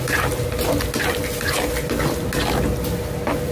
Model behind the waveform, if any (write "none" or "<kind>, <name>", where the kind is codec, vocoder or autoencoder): none